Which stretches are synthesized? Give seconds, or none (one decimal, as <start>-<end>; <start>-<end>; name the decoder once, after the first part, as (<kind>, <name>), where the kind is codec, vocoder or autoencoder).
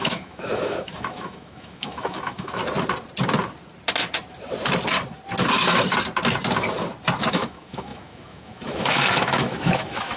0.0-2.6 (autoencoder, DAC-VAE); 7.3-10.2